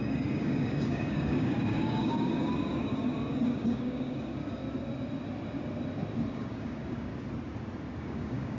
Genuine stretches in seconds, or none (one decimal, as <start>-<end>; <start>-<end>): 4.6-6.3; 7.1-8.0